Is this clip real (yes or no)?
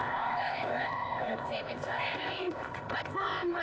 no